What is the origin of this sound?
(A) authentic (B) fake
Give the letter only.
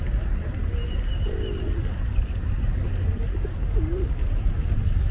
A